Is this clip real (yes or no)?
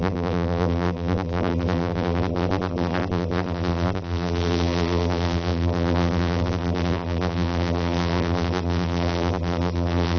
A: no